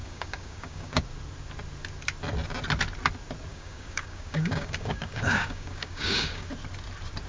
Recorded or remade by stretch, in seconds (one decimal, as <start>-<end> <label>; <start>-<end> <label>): 0.0-1.0 remade; 1.0-3.5 recorded; 3.5-6.5 remade; 6.5-7.3 recorded